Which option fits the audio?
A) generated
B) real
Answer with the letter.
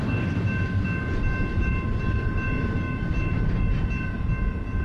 B